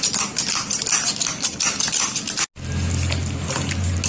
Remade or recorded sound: recorded